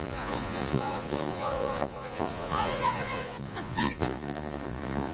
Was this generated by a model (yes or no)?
yes